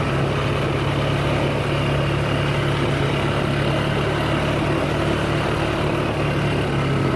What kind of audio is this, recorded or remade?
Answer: recorded